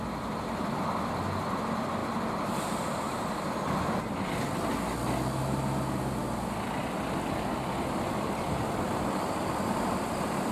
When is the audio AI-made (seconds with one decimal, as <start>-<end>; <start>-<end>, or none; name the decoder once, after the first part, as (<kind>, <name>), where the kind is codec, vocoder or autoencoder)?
none